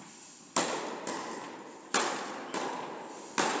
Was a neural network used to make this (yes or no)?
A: no